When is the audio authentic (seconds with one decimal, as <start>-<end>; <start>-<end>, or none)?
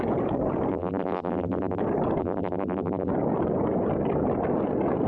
0.0-0.7; 1.8-2.2; 3.1-5.1